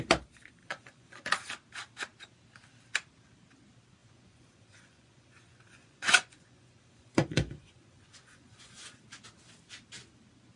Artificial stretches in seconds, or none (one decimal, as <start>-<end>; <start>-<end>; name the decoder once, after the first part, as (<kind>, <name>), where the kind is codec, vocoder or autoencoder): 0.6-1.2 (vocoder, Vocos); 4.0-9.0